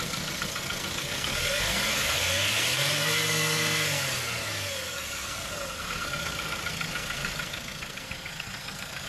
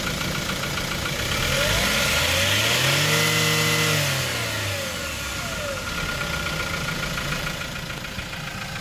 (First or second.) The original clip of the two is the second